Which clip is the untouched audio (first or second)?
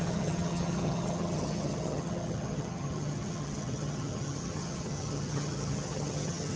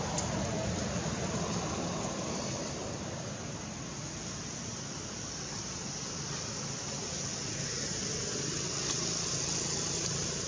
second